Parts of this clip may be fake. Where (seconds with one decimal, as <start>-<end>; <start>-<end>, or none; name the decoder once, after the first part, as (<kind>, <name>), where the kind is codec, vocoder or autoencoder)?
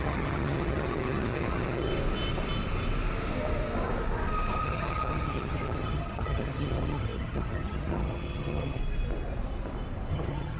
0.0-1.9 (vocoder, HiFi-GAN); 4.6-8.8; 10.1-10.6